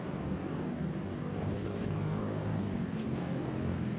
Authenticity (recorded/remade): remade